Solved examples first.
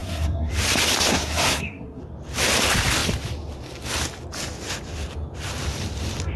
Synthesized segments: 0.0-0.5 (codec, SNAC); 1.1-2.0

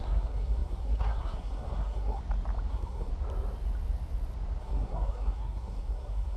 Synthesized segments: 0.0-2.2 (codec, SNAC); 2.7-3.1; 4.6-6.4

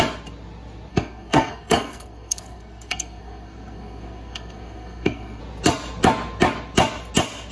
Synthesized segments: 0.9-5.4 (codec, SNAC)